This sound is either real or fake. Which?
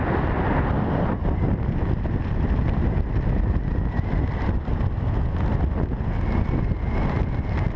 real